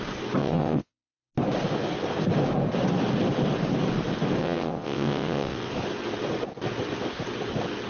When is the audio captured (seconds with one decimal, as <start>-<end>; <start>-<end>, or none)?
0.0-0.4; 1.3-4.4; 5.7-7.9